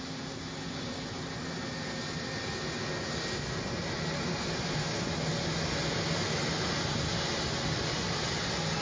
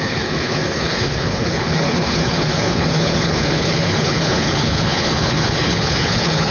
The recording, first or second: first